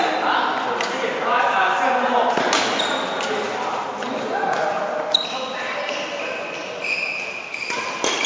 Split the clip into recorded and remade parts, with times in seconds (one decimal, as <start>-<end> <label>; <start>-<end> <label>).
0.0-8.3 recorded

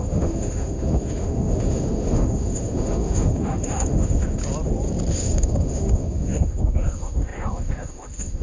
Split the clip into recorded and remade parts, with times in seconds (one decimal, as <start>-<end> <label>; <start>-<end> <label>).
0.0-4.4 remade; 4.4-5.1 recorded; 5.1-8.4 remade

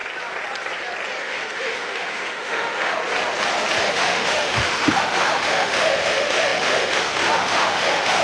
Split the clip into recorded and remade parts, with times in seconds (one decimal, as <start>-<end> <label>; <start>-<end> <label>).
0.0-1.2 recorded; 1.2-3.0 remade; 3.0-3.9 recorded; 3.9-8.2 remade

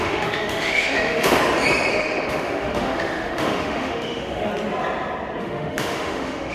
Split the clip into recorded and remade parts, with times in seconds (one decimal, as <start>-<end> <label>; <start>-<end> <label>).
0.0-1.4 remade; 1.4-1.9 recorded; 1.9-4.5 remade; 4.5-5.4 recorded; 5.4-6.5 remade

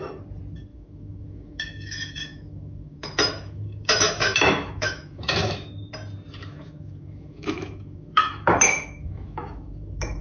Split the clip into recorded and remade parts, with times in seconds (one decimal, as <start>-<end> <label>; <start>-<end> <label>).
0.0-0.7 recorded; 0.7-5.9 remade; 5.9-6.4 recorded; 6.4-10.2 remade